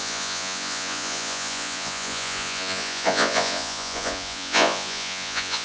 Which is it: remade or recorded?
remade